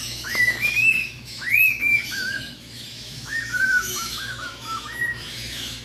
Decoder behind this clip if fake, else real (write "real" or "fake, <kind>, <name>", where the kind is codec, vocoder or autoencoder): fake, autoencoder, DAC-VAE